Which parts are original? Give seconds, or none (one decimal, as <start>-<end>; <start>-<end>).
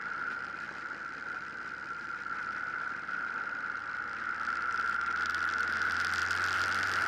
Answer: 1.0-7.1